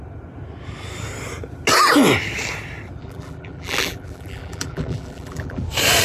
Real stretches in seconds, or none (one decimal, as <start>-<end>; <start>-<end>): 0.0-3.0; 5.6-6.0